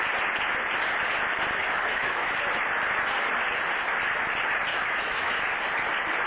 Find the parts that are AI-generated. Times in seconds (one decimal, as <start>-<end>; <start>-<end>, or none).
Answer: 1.6-2.3; 4.7-5.3